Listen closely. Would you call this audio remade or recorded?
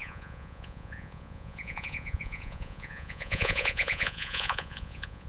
remade